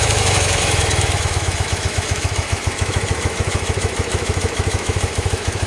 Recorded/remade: remade